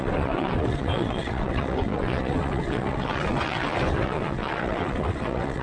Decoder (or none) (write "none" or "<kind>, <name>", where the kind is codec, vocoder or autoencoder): vocoder, WaveNeXt